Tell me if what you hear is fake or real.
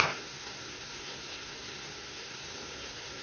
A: fake